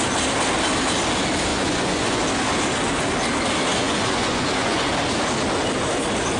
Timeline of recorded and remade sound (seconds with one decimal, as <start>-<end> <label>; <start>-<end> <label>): 0.0-1.5 recorded; 1.5-2.2 remade; 2.2-3.7 recorded; 3.7-4.9 remade; 4.9-6.4 recorded

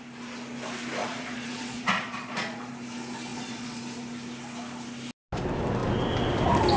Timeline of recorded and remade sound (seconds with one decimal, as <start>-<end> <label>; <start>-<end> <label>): 0.0-1.0 recorded; 1.0-2.7 remade; 2.7-3.3 recorded; 3.3-3.8 remade; 3.8-6.8 recorded

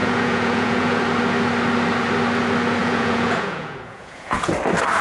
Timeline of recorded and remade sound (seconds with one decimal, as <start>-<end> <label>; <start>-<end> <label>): 0.0-1.0 remade; 1.0-2.8 recorded; 2.8-4.5 remade; 4.5-5.0 recorded

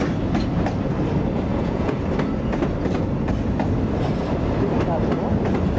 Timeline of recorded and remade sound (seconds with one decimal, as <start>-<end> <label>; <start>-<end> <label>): 0.0-1.5 recorded; 1.5-2.0 remade; 2.0-5.8 recorded

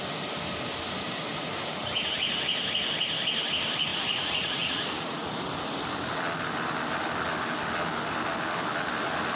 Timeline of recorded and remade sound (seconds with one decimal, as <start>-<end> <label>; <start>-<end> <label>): 0.0-3.9 recorded; 3.9-5.3 remade; 5.3-9.4 recorded